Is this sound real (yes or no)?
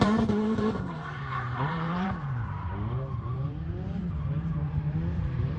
no